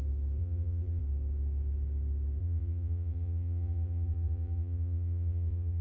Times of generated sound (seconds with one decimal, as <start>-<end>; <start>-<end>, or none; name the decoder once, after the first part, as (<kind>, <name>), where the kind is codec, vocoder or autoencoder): 0.4-1.0 (vocoder, BigVGAN v2); 2.4-5.8